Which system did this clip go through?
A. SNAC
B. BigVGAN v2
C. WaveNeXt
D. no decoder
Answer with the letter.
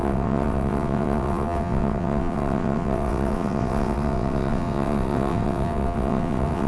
C